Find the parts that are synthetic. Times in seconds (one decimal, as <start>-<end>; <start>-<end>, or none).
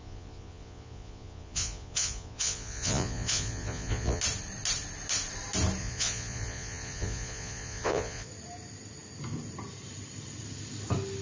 0.0-4.2; 5.8-8.3